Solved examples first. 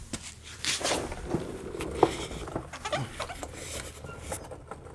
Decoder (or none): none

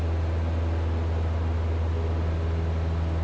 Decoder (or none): none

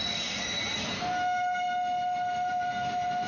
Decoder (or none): none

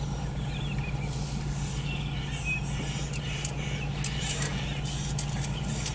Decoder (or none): none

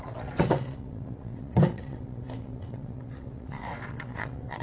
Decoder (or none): vocoder, WaveNeXt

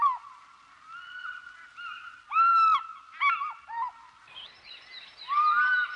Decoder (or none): none